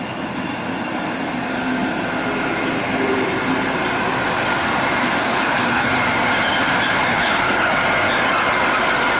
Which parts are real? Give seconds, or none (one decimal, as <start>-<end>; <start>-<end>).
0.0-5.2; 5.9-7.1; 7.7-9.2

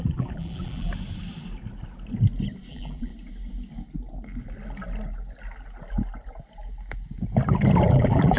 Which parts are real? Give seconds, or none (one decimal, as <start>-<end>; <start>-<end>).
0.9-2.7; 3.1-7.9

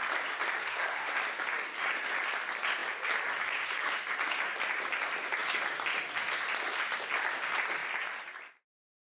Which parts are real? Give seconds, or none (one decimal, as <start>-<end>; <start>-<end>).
0.0-0.6; 1.2-9.1

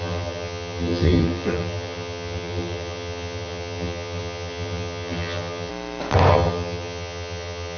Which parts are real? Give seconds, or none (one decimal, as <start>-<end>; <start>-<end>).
5.7-6.3